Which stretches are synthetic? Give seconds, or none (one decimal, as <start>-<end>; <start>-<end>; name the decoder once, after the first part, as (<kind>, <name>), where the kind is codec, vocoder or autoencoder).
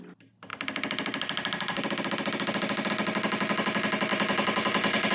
4.1-5.1 (vocoder, BigVGAN v2)